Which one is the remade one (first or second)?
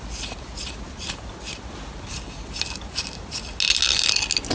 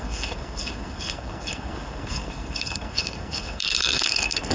second